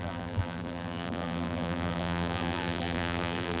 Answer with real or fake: fake